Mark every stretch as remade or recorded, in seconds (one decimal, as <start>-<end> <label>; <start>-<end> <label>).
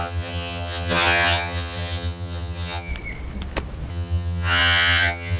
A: 0.0-2.9 remade; 2.9-3.9 recorded; 3.9-5.4 remade